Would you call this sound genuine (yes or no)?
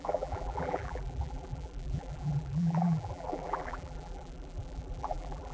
no